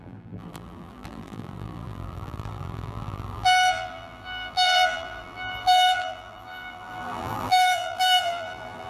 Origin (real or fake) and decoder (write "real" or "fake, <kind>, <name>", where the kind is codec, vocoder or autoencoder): fake, vocoder, BigVGAN v2